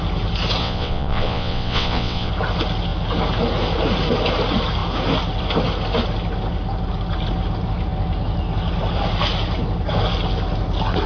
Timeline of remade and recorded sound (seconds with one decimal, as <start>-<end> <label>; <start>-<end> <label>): 0.0-0.6 recorded; 0.6-2.3 remade; 2.3-11.1 recorded